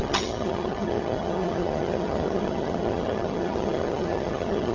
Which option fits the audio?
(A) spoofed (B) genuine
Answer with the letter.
A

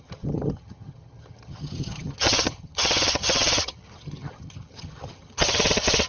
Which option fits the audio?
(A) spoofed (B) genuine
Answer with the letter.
A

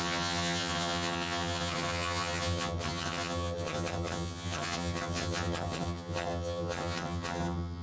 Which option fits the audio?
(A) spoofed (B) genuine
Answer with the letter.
A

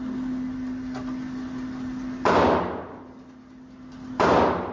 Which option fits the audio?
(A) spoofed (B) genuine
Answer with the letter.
B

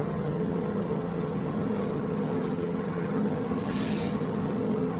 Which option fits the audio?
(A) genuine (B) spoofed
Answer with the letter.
B